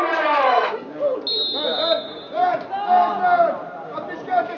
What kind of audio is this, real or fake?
real